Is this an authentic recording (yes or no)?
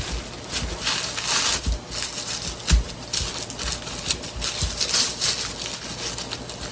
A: yes